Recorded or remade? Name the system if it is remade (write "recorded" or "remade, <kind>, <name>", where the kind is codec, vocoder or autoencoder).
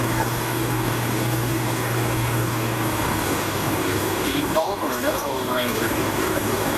remade, codec, DAC